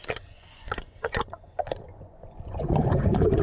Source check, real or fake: fake